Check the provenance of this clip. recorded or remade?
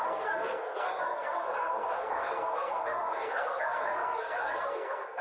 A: remade